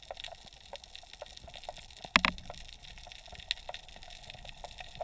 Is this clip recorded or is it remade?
recorded